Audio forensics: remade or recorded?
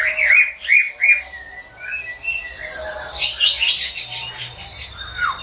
remade